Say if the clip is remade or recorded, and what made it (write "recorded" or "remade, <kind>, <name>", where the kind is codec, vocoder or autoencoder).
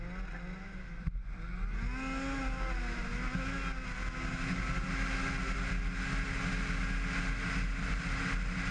recorded